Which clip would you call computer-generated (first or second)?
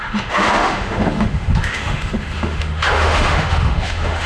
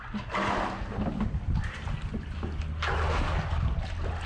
first